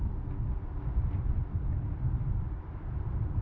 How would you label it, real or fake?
real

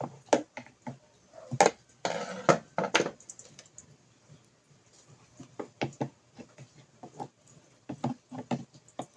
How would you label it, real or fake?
real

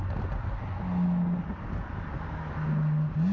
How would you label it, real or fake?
real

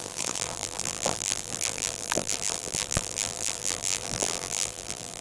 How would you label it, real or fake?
fake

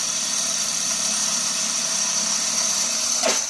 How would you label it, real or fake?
fake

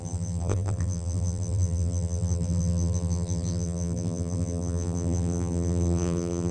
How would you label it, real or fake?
fake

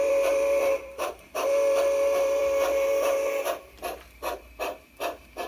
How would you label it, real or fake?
fake